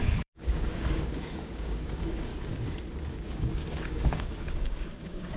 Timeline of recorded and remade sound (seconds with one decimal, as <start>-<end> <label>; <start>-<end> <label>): 0.0-2.3 remade; 2.3-3.1 recorded; 3.1-5.4 remade